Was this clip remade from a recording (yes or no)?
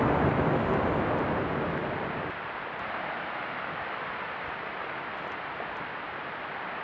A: no